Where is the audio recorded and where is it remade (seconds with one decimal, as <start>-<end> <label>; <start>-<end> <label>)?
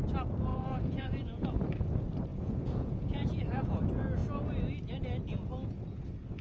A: 0.0-0.5 recorded; 0.5-1.5 remade; 1.5-2.3 recorded; 2.3-3.8 remade; 3.8-6.4 recorded